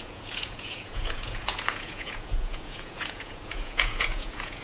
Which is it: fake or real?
fake